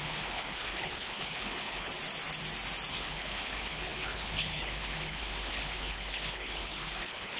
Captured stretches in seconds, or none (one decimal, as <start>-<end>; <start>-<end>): 1.9-2.9